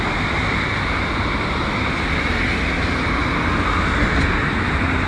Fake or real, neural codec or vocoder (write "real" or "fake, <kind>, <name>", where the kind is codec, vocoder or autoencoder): real